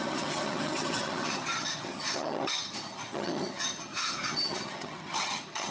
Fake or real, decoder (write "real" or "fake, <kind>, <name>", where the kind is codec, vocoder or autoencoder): fake, vocoder, HiFi-GAN